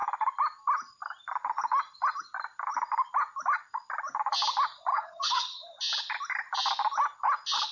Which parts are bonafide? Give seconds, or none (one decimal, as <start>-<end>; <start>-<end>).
0.0-4.9; 5.8-7.7